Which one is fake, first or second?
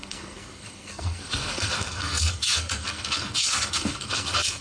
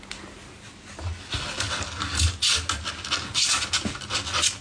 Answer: first